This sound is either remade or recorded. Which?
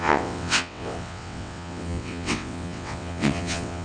remade